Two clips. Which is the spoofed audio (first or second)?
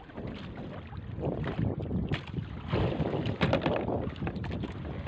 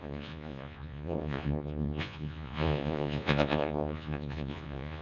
second